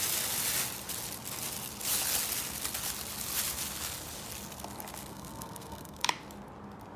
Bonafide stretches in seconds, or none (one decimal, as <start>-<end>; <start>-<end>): 0.0-5.1; 6.0-7.0